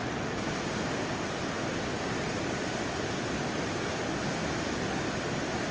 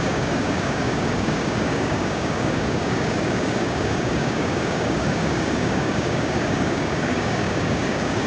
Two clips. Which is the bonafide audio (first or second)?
first